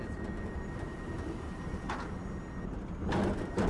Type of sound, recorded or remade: recorded